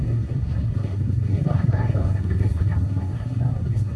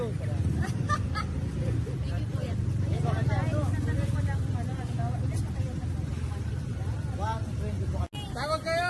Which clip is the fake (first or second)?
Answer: first